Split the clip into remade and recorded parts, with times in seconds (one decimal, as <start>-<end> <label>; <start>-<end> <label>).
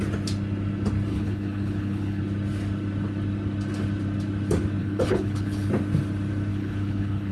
0.0-1.1 recorded; 1.1-2.2 remade; 2.2-4.8 recorded; 4.8-5.7 remade; 5.7-6.5 recorded; 6.5-7.3 remade